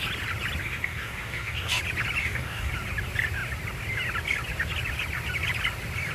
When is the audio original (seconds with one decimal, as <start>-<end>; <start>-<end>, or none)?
0.0-0.6; 1.8-2.2; 2.7-6.1